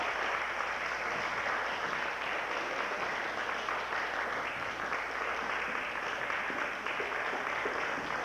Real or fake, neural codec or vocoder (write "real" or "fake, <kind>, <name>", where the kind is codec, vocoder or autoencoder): real